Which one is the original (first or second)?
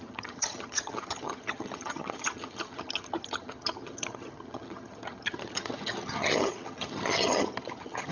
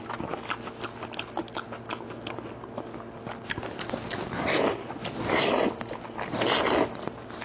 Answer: second